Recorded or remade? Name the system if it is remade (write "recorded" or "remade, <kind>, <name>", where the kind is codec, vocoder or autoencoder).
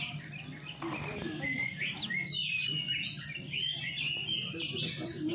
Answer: recorded